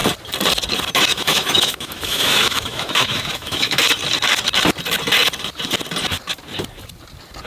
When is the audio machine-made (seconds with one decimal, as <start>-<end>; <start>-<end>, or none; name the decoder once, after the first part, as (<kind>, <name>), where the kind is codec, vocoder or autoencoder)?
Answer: 1.1-3.8 (autoencoder, DAC-VAE)